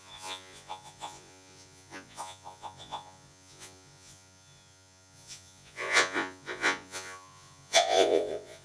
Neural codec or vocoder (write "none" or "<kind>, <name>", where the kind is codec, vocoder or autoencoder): vocoder, Vocos